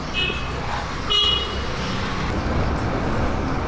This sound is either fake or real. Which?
real